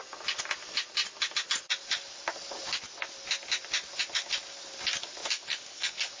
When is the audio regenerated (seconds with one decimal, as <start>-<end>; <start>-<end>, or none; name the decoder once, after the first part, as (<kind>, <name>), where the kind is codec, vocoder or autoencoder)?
5.2-6.2 (codec, DAC)